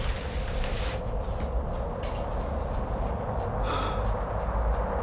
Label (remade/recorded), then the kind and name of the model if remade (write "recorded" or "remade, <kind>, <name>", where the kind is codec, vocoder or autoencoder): recorded